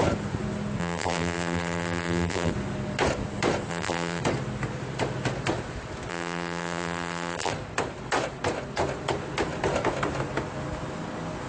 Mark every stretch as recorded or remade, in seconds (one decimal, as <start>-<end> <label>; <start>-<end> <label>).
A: 0.0-0.8 recorded; 0.8-2.5 remade; 2.5-3.7 recorded; 3.7-4.2 remade; 4.2-6.1 recorded; 6.1-7.5 remade; 7.5-11.5 recorded